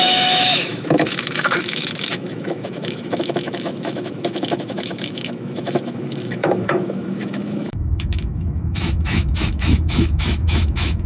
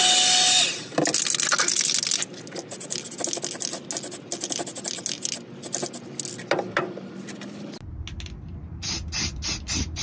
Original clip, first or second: second